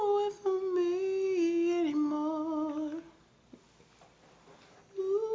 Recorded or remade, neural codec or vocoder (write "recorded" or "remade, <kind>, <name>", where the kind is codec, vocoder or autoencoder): recorded